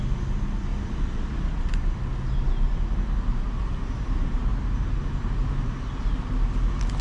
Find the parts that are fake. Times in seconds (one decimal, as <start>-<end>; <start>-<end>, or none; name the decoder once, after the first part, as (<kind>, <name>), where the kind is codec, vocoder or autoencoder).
none